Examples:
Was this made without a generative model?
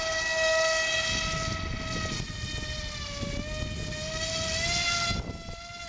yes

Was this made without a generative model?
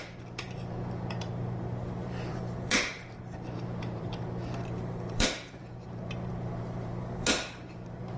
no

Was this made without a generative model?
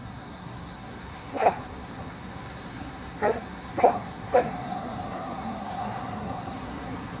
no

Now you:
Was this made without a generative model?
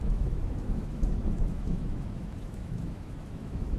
no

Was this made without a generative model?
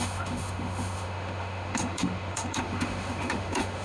no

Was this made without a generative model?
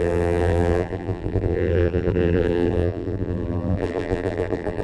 no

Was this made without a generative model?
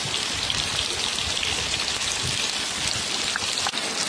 no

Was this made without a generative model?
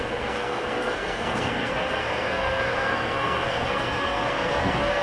no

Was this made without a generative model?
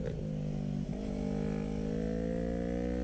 yes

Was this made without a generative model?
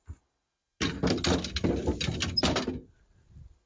yes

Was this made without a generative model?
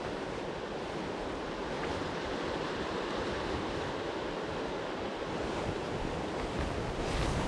no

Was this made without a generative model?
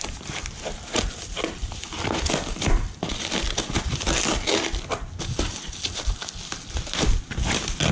yes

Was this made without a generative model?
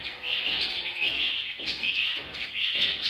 no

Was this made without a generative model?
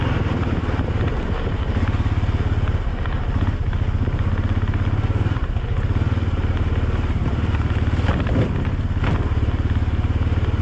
yes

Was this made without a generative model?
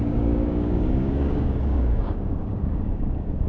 no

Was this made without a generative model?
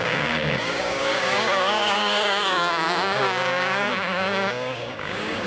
no